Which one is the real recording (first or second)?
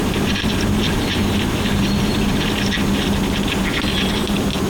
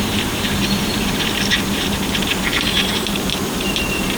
first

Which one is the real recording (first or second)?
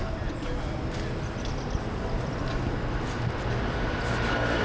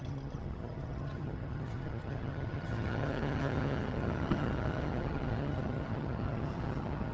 first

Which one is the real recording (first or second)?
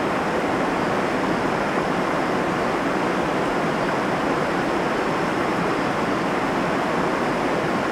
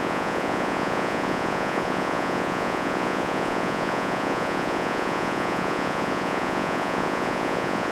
first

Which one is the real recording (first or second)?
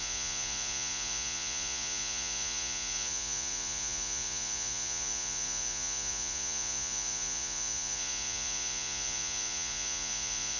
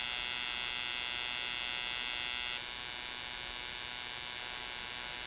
second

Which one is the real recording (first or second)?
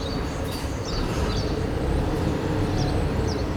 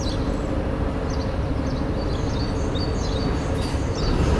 second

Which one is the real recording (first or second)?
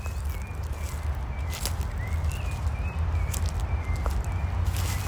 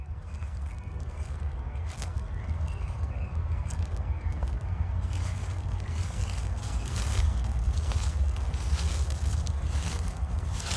first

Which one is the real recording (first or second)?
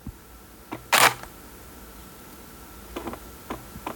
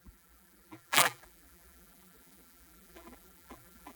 first